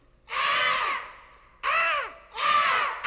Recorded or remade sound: recorded